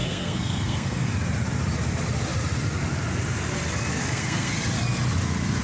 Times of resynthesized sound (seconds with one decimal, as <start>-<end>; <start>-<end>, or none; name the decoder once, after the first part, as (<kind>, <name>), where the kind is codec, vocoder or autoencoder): 0.0-1.1 (codec, SNAC); 4.0-4.5

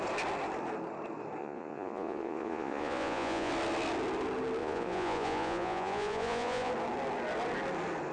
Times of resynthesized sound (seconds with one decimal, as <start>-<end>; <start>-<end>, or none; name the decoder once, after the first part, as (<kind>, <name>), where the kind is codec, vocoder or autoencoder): 1.4-3.5 (vocoder, Vocos); 4.6-6.7